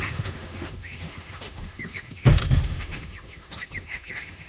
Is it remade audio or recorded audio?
remade